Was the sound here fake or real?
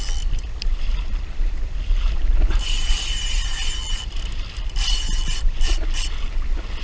fake